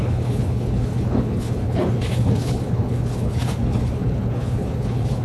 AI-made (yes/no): yes